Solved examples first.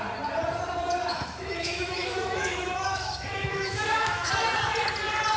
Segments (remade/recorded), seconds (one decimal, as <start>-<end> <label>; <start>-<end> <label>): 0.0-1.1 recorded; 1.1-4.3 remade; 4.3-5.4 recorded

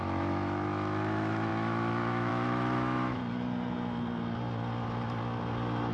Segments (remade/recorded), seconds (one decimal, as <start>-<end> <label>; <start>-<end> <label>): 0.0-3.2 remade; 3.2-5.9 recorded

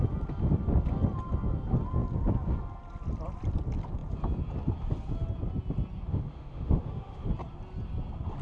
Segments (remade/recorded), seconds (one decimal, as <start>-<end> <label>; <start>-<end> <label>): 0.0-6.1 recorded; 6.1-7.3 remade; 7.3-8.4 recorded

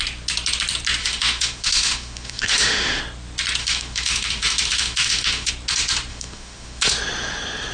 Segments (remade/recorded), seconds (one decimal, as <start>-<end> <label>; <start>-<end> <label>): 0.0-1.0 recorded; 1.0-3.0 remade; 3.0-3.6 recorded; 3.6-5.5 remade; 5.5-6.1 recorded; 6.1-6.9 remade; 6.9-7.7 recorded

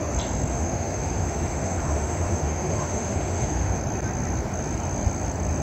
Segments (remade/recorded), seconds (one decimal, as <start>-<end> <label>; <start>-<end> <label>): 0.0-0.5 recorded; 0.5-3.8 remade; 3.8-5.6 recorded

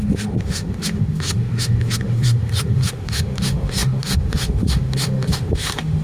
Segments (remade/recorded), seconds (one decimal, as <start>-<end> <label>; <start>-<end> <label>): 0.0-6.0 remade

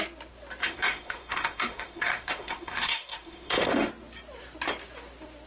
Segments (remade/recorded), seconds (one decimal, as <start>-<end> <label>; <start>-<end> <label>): 0.0-0.6 recorded; 0.6-3.9 remade; 3.9-5.5 recorded

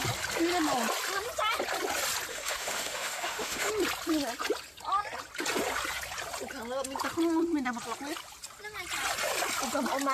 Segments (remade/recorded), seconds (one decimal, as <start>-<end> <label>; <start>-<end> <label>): 0.0-2.3 recorded; 2.3-3.7 remade; 3.7-10.1 recorded